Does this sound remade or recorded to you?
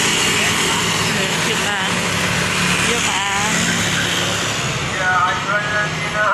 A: recorded